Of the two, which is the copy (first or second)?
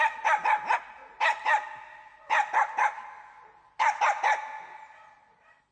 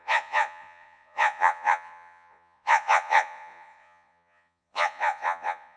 second